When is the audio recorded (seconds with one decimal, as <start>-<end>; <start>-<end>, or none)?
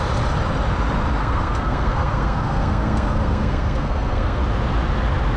0.0-1.2; 4.4-5.4